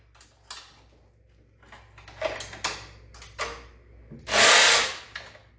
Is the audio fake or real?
real